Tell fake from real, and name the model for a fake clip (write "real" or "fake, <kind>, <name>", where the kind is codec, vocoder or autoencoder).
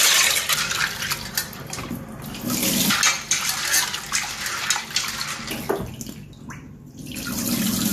real